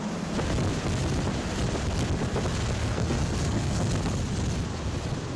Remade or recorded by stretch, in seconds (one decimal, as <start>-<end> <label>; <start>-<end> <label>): 0.0-2.8 recorded; 2.8-3.9 remade; 3.9-5.4 recorded

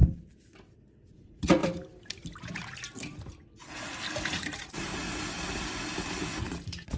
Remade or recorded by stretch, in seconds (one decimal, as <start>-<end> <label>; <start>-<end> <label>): 0.0-1.1 recorded; 1.1-1.6 remade; 1.6-4.2 recorded; 4.2-4.9 remade; 4.9-6.2 recorded; 6.2-7.0 remade

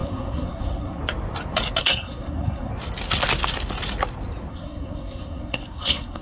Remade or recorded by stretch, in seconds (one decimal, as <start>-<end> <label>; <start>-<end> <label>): 0.0-1.0 remade; 1.0-1.8 recorded; 1.8-2.7 remade; 2.7-4.5 recorded; 4.5-6.2 remade

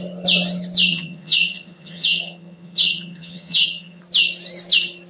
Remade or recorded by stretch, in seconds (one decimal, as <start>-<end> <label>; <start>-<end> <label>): 0.0-0.9 recorded; 0.9-4.0 remade; 4.0-5.1 recorded